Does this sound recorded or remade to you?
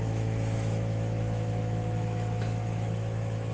remade